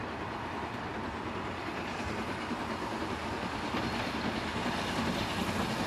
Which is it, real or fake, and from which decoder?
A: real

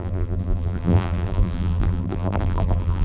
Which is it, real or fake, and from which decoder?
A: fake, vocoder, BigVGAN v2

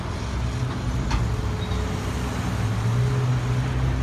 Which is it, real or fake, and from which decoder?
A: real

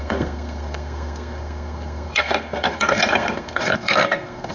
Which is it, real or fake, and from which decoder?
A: fake, codec, SNAC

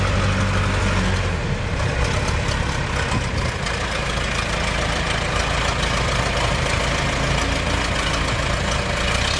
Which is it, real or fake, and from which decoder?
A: real